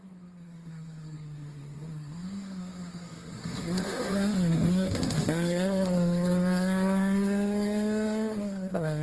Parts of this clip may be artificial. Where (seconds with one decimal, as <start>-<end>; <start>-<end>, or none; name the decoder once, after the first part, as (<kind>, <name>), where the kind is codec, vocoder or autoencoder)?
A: 0.0-9.0 (codec, SNAC)